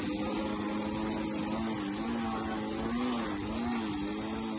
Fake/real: real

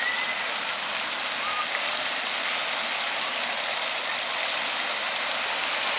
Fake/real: real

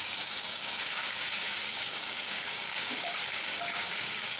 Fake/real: fake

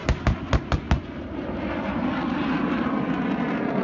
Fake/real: real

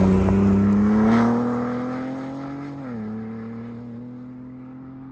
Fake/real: real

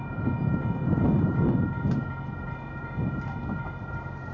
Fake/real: real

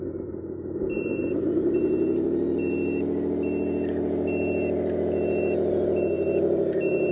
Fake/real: real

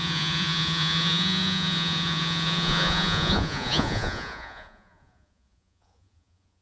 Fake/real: fake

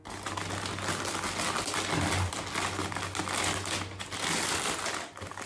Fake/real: real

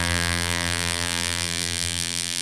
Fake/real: fake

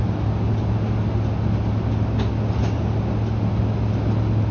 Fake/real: real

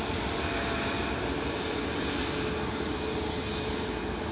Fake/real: real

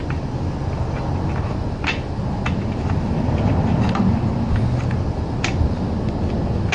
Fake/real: real